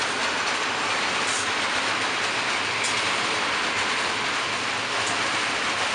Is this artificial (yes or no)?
no